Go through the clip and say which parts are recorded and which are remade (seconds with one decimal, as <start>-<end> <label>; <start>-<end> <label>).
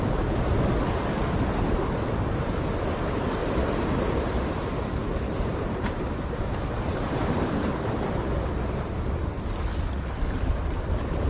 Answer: 0.0-3.4 recorded; 3.4-8.1 remade; 8.1-11.3 recorded